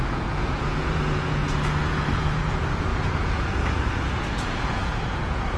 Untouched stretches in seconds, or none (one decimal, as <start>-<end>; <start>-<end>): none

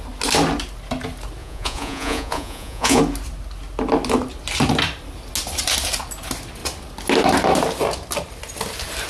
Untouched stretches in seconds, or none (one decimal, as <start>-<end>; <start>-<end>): 0.0-1.4; 3.0-9.1

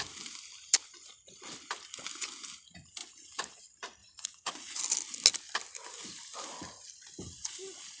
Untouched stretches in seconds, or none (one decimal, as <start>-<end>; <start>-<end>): 0.0-4.0; 4.8-8.0

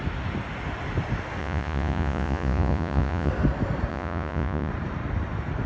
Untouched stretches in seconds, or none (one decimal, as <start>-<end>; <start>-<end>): 0.0-1.4; 3.3-3.9; 4.7-5.7

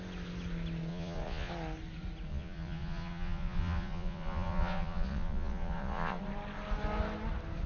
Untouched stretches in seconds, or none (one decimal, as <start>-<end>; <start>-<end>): 0.0-0.9; 1.5-2.3; 6.2-7.7